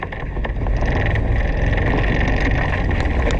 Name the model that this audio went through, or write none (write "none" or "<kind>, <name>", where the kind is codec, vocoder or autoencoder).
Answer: none